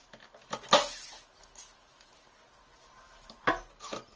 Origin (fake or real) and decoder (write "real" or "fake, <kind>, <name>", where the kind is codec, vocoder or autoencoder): real